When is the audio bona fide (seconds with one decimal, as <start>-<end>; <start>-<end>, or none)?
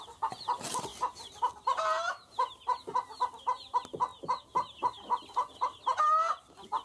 0.0-6.8